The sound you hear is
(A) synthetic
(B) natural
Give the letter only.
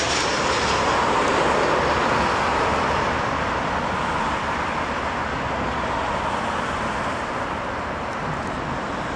B